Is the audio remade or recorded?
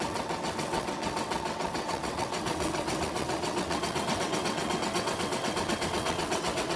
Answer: remade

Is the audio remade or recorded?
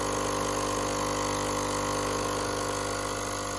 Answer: recorded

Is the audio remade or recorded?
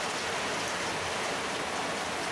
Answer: recorded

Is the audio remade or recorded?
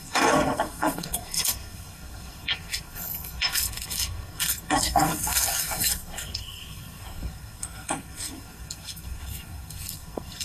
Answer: remade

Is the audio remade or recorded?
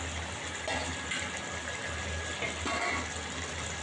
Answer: recorded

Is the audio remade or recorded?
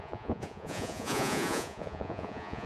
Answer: remade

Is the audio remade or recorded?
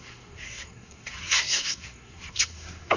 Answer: remade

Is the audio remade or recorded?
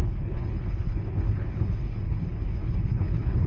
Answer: remade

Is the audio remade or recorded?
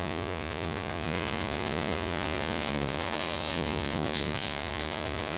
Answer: remade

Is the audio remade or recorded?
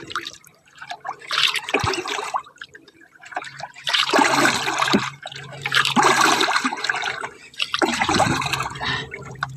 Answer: remade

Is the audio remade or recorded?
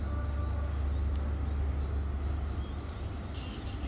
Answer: recorded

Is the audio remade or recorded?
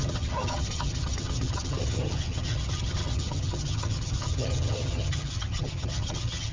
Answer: remade